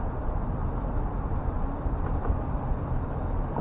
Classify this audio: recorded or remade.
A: recorded